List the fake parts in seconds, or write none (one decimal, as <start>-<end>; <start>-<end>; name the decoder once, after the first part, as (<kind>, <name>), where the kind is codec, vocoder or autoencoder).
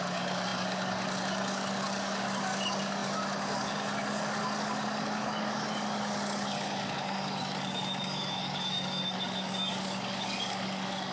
0.0-11.1 (codec, DAC)